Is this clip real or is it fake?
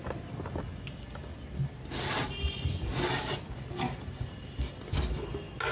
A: real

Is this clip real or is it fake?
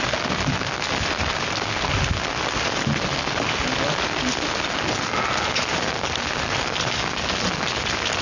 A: real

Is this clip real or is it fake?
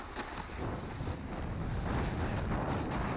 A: real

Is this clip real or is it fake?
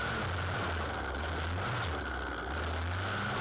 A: real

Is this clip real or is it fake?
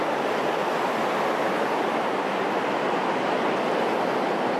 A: real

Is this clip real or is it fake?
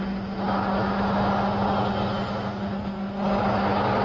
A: real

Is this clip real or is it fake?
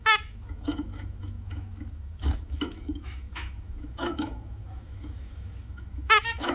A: fake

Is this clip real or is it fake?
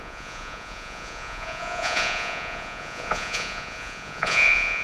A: fake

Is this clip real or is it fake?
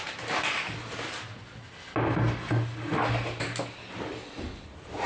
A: real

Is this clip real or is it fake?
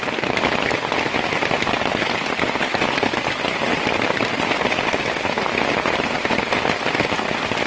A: real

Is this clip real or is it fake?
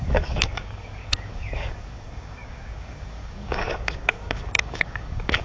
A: fake